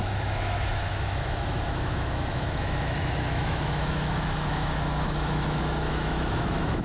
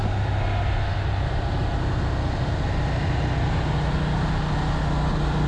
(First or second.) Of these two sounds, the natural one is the second